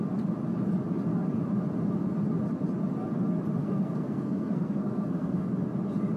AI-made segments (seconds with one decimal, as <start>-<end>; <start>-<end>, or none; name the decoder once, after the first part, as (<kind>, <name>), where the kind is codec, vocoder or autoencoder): 3.6-5.5 (codec, SNAC)